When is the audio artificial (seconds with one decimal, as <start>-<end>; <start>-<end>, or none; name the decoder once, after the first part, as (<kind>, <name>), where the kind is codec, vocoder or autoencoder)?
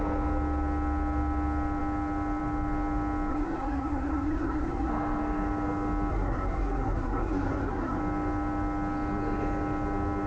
3.3-4.9 (codec, SNAC); 6.1-8.0